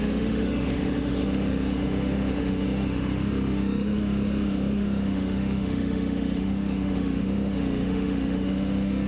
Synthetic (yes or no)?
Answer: yes